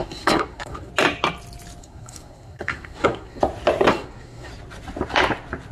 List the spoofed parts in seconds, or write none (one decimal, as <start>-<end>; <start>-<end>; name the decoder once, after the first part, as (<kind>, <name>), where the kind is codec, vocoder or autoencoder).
0.0-0.9 (codec, SNAC); 1.8-3.4; 3.9-4.5